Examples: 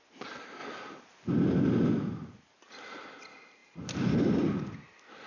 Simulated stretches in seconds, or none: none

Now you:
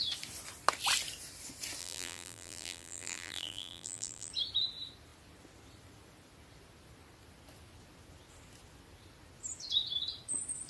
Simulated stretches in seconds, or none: 1.8-4.3 (vocoder, BigVGAN v2)

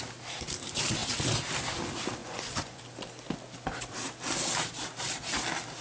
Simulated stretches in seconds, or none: 2.2-2.8 (vocoder, Vocos)

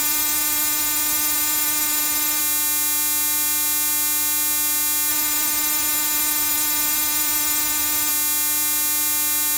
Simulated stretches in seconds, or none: 0.0-2.4 (vocoder, BigVGAN v2); 5.1-8.1

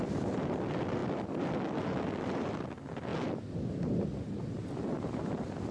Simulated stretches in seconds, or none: none

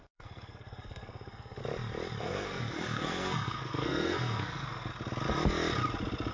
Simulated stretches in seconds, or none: 0.0-1.6 (codec, SNAC); 2.2-4.9

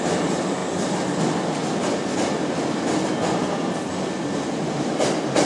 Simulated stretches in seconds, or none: 0.6-1.2 (vocoder, BigVGAN v2); 1.6-3.9